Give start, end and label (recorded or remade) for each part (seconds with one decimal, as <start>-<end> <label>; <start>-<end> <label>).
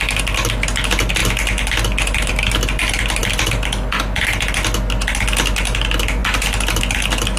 0.0-7.4 recorded